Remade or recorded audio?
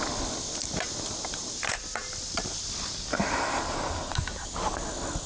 recorded